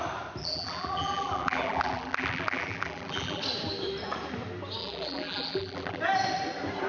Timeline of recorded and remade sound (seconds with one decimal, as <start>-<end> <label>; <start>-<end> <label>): 0.0-0.4 recorded; 0.4-3.4 remade; 3.4-4.8 recorded; 4.8-6.0 remade; 6.0-6.9 recorded